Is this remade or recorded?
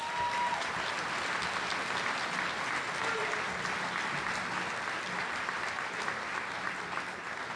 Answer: recorded